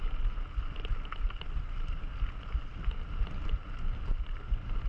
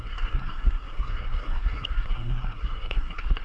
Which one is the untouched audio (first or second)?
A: first